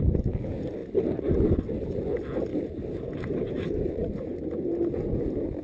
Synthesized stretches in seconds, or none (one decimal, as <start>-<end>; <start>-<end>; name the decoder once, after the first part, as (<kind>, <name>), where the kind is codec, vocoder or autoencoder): 2.5-3.9 (vocoder, BigVGAN v2)